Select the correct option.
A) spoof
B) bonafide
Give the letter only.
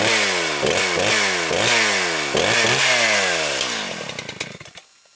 B